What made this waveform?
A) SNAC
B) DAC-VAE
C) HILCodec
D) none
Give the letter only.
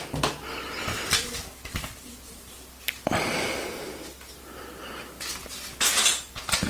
D